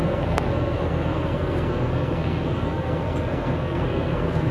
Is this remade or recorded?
remade